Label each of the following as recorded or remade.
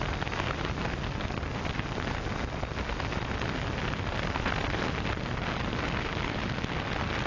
recorded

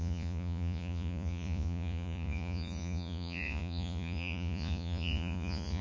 remade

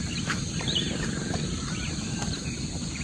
remade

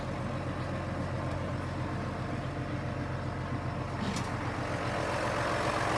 recorded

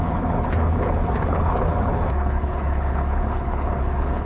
remade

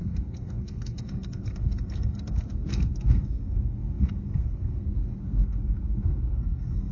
remade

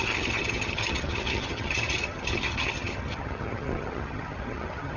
remade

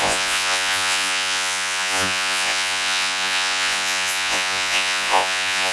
remade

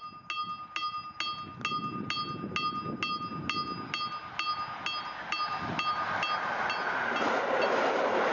recorded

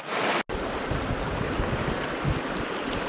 recorded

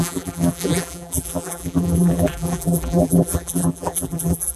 remade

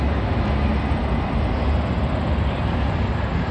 recorded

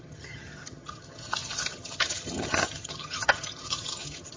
remade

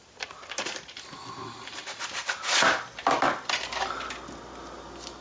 recorded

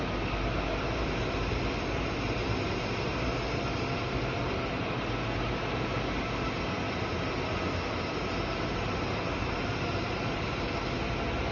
recorded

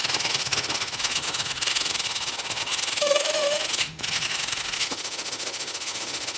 remade